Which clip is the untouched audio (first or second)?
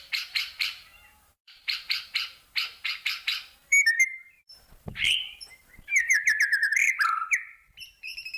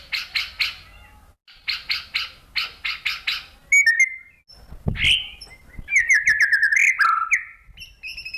second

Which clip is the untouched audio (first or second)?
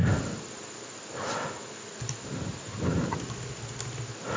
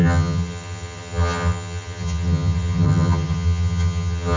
first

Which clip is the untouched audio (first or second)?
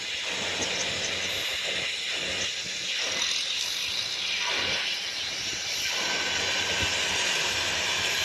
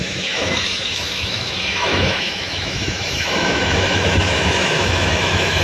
first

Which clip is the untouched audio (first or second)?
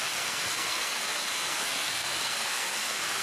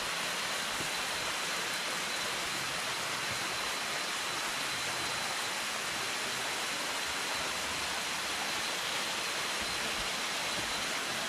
second